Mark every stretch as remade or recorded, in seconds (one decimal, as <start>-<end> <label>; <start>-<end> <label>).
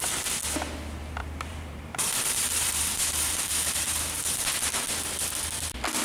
0.0-1.2 recorded; 1.2-4.8 remade; 4.8-6.0 recorded